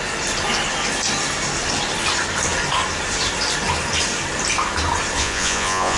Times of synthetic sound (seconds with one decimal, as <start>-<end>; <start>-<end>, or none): 5.2-6.0

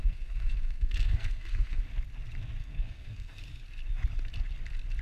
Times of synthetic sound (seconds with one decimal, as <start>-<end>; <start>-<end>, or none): 0.0-1.8; 2.6-3.4

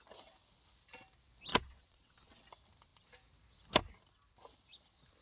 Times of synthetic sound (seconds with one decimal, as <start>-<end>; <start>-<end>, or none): 1.5-2.4

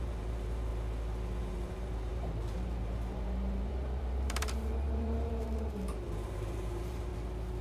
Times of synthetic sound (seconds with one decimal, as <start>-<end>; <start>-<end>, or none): 0.0-0.7; 1.4-7.1

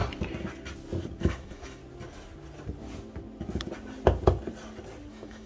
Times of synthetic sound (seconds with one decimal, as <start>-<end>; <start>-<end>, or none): 1.2-1.8; 5.1-5.5

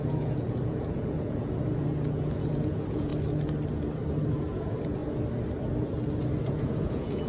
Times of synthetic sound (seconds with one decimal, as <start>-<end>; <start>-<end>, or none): 0.0-3.1; 4.3-5.0; 6.4-7.3